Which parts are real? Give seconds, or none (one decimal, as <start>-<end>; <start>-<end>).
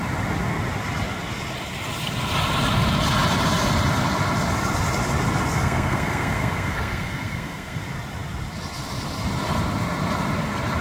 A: 0.0-5.5; 7.8-10.8